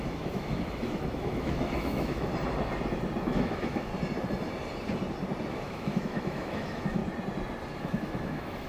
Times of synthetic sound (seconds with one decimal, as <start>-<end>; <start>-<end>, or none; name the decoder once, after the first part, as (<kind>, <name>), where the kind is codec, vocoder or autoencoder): 0.0-2.3 (autoencoder, DAC-VAE); 3.2-3.9; 5.5-7.0; 7.8-8.7